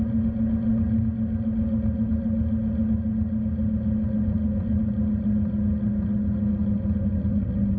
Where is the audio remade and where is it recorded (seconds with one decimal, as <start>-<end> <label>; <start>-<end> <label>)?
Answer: 0.0-7.8 recorded